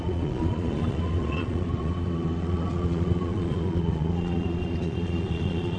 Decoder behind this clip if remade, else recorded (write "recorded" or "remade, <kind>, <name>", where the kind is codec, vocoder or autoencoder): remade, vocoder, Vocos